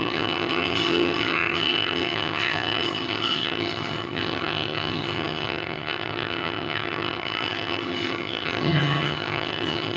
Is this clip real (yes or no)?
no